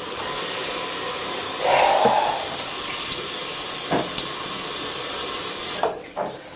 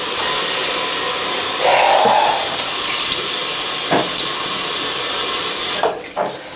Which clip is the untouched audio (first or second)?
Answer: second